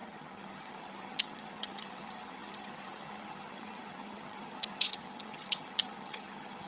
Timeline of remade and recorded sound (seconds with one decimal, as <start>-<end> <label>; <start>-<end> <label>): 0.0-6.7 remade